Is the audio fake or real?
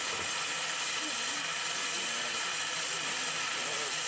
real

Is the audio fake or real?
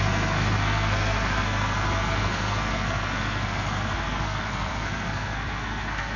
fake